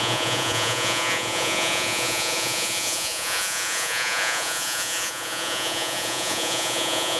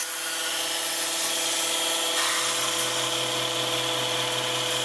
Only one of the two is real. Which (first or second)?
second